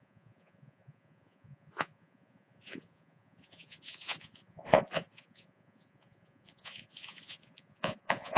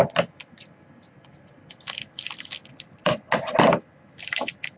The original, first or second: second